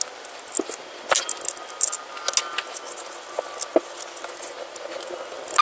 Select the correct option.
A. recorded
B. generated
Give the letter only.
A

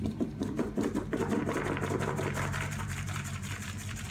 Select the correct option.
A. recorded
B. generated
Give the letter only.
B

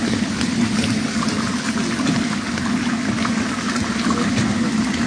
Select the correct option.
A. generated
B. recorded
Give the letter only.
B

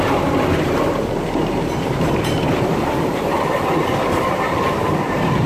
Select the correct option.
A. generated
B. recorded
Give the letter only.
A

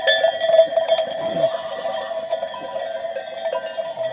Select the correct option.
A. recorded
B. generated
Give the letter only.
A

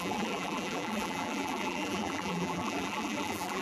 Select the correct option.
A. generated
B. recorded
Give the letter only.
A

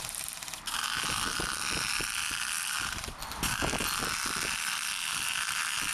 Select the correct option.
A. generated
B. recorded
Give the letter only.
B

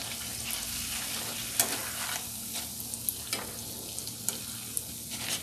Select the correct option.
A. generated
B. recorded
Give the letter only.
B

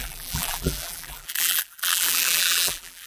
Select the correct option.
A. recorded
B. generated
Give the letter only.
B